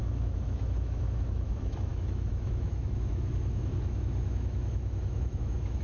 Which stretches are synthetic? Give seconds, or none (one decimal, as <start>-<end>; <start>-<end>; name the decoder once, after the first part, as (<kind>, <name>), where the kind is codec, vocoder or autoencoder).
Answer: 0.0-5.8 (autoencoder, DAC-VAE)